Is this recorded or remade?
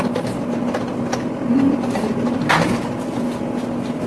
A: recorded